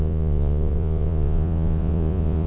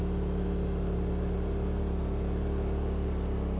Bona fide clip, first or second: second